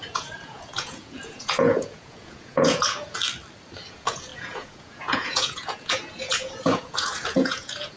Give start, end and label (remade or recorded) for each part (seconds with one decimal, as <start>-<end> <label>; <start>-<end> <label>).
0.0-3.2 remade; 3.2-3.9 recorded; 3.9-8.0 remade